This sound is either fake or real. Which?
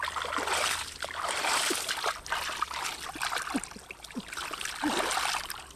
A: real